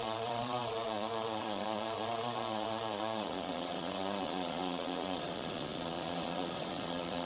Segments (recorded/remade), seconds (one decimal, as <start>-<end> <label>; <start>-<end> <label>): 0.0-7.3 remade